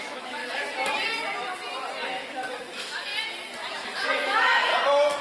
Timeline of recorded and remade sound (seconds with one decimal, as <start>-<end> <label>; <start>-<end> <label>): 0.0-0.4 remade; 0.4-2.3 recorded; 2.3-3.1 remade; 3.1-3.7 recorded; 3.7-4.7 remade; 4.7-5.2 recorded